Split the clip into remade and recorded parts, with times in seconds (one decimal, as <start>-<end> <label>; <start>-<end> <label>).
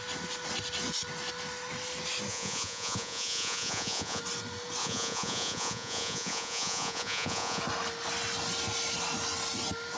0.0-2.3 recorded; 2.3-4.2 remade; 4.2-4.8 recorded; 4.8-7.6 remade; 7.6-10.0 recorded